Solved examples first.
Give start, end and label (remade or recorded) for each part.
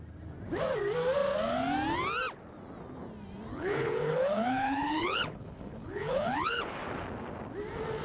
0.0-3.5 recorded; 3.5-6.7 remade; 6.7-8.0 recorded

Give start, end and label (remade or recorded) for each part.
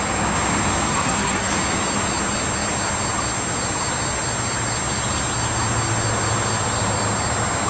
0.0-0.9 recorded; 0.9-1.5 remade; 1.5-7.7 recorded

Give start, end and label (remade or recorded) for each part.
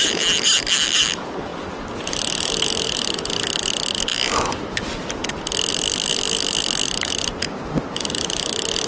0.0-8.9 recorded